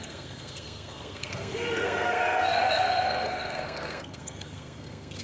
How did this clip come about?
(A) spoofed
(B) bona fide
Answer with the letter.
A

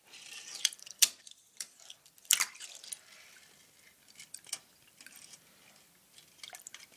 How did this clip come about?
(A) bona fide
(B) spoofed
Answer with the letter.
B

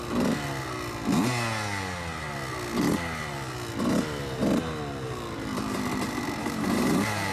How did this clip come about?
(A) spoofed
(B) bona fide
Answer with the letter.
B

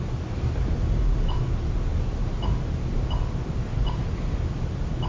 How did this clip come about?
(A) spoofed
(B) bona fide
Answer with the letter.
B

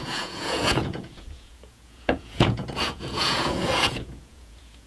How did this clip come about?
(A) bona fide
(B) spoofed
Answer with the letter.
B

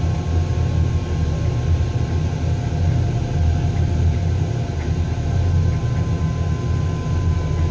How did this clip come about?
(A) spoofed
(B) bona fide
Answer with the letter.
B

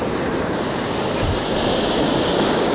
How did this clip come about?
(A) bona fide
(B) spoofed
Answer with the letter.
A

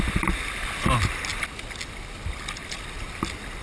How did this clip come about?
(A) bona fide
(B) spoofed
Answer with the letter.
A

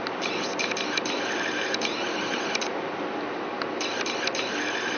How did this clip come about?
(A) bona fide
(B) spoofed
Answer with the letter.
A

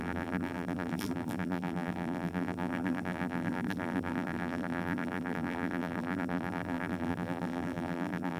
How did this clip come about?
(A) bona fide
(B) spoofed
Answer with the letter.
B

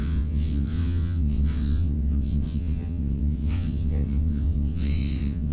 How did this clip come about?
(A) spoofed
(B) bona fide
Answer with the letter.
A